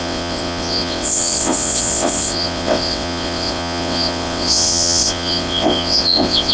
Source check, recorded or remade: remade